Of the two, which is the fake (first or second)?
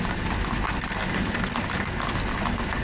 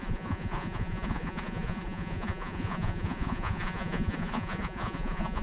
second